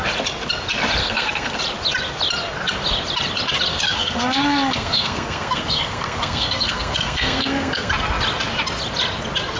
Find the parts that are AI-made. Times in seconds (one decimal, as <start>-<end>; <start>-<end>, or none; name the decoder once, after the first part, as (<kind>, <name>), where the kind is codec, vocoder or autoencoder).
1.0-1.6 (codec, SNAC); 3.7-7.9